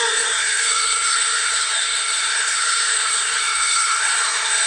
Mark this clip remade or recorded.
remade